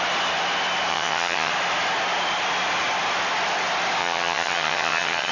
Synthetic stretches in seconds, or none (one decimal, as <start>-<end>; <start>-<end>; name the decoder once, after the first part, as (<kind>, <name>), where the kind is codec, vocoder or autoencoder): 0.9-1.5 (vocoder, HiFi-GAN); 4.0-5.3